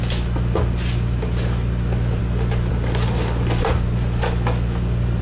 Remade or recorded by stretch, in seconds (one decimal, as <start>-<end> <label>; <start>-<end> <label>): 0.0-5.2 recorded